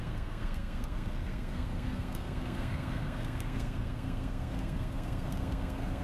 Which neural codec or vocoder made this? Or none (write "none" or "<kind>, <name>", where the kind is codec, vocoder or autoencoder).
codec, SNAC